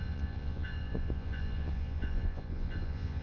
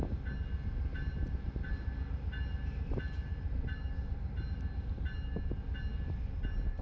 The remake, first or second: first